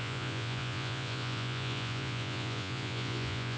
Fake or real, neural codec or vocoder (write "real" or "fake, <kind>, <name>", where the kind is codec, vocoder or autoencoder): fake, vocoder, Vocos